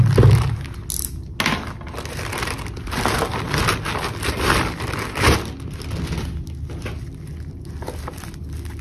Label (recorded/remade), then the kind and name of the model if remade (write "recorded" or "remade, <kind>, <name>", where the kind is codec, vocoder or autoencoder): recorded